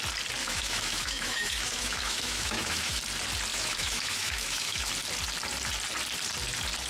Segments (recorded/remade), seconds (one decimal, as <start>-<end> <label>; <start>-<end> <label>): 0.0-0.4 recorded; 0.4-3.0 remade; 3.0-3.5 recorded; 3.5-4.9 remade; 4.9-6.9 recorded